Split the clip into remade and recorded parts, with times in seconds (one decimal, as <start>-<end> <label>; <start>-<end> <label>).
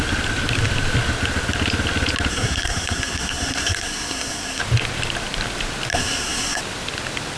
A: 0.0-2.3 recorded; 2.3-4.6 remade; 4.6-5.9 recorded; 5.9-6.6 remade; 6.6-7.4 recorded